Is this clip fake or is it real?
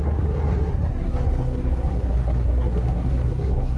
fake